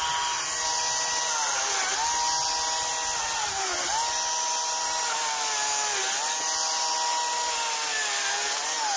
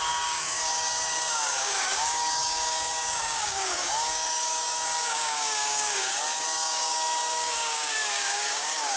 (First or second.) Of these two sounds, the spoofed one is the second